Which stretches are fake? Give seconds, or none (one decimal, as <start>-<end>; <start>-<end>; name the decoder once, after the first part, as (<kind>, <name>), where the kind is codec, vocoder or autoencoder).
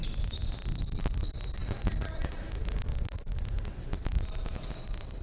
none